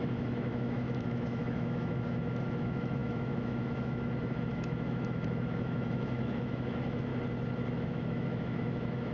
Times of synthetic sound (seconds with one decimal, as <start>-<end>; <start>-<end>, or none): 0.0-7.1; 7.7-9.1

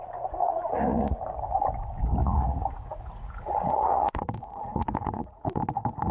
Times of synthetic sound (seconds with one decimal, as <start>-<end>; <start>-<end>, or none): 0.4-1.2; 2.2-5.6

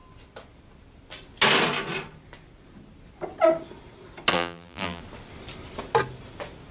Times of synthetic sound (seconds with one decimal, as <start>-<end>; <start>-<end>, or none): 4.3-5.0

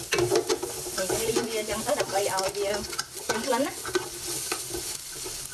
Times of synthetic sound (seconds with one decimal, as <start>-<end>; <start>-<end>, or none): none

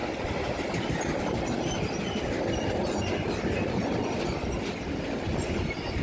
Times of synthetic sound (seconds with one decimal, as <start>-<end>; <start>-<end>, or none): none